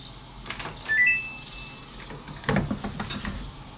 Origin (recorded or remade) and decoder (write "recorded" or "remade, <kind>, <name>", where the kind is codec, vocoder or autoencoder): recorded